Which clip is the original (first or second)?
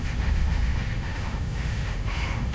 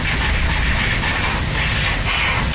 second